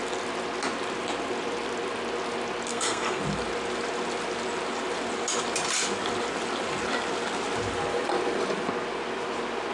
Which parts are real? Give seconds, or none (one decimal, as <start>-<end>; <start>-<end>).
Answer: 0.0-2.7; 3.2-9.7